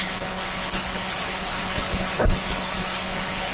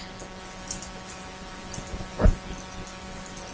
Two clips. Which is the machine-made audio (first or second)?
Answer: first